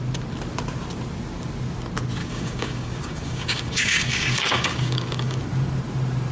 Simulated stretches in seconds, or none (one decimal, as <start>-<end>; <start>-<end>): 2.2-5.4